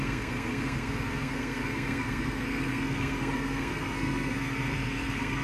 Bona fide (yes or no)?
no